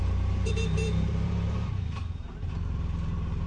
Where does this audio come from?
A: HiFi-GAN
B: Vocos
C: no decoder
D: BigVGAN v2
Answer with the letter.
D